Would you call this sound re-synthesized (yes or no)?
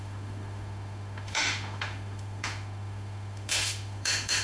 yes